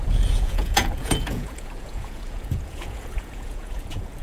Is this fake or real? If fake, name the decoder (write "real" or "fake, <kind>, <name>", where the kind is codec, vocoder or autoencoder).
fake, vocoder, Vocos